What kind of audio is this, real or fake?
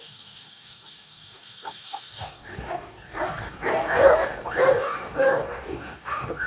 fake